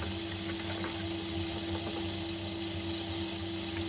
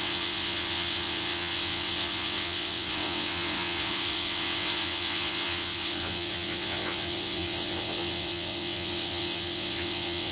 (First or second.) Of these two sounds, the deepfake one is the second